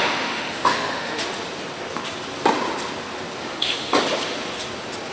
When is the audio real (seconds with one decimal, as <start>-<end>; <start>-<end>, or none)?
1.2-3.4; 3.9-5.1